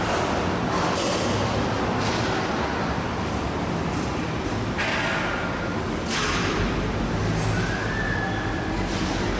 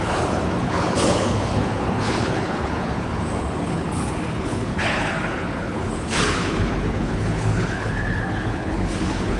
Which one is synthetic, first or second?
second